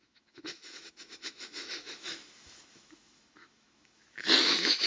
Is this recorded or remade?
remade